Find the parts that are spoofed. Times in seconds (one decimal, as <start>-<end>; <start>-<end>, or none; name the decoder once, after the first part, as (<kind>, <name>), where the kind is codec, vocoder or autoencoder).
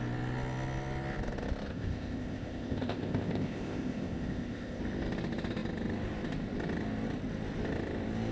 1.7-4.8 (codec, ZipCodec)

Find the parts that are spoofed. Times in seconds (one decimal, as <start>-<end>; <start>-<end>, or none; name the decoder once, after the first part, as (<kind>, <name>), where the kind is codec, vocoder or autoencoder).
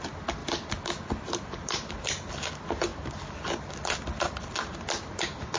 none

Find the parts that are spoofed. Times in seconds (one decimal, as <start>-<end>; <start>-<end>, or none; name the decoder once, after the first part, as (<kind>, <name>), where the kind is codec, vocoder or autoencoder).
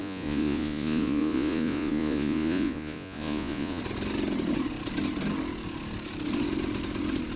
0.0-3.8 (vocoder, Vocos)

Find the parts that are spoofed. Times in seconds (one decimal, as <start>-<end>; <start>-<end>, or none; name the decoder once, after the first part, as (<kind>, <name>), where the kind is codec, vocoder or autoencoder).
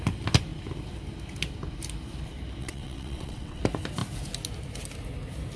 2.6-3.6 (vocoder, WaveNeXt)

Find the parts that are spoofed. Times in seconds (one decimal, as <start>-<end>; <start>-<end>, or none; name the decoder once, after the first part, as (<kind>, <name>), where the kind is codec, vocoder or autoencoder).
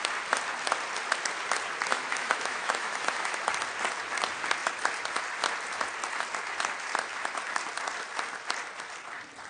1.9-3.5 (autoencoder, DAC-VAE)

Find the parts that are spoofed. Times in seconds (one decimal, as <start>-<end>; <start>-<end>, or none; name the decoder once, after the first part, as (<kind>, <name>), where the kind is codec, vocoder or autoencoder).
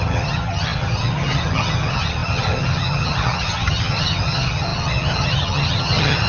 0.0-6.3 (vocoder, HiFi-GAN)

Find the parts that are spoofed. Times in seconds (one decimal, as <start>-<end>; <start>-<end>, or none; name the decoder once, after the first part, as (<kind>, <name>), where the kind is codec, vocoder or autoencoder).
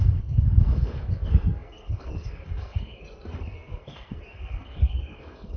0.0-5.6 (codec, SNAC)